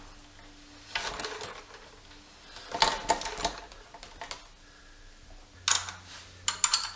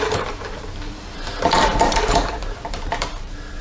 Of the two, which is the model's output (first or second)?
second